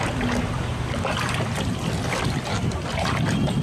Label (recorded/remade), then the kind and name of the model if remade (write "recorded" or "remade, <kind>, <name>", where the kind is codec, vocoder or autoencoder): recorded